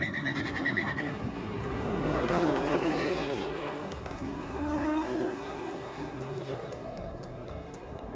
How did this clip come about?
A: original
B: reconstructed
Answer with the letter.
B